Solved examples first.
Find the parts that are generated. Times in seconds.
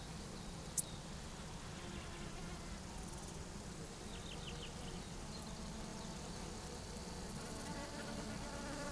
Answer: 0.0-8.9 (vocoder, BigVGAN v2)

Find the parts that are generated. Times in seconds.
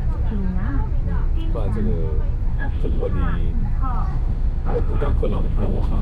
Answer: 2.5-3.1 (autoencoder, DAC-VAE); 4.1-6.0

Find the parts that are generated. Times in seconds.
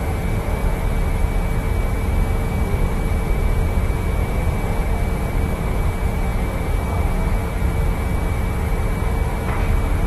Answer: none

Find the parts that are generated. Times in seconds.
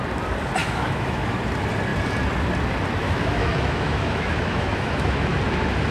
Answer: 0.6-1.4 (autoencoder, DAC-VAE); 3.0-5.3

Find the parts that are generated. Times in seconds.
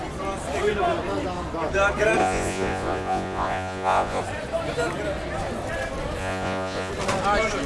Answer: 2.2-4.2 (vocoder, Vocos); 6.2-6.9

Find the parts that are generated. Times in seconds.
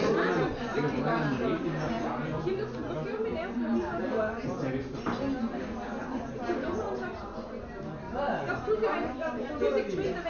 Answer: none